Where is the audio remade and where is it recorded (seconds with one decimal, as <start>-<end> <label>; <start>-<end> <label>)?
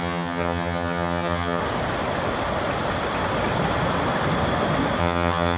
0.0-1.6 remade; 1.6-5.0 recorded; 5.0-5.6 remade